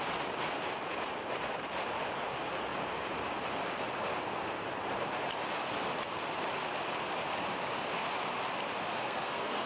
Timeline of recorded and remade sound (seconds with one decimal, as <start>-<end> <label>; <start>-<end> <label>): 0.0-8.9 recorded; 8.9-9.7 remade